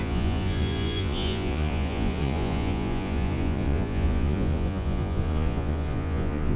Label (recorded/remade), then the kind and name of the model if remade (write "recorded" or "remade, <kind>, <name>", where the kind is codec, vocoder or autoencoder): remade, vocoder, Vocos